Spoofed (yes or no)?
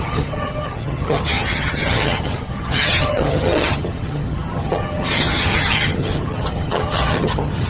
yes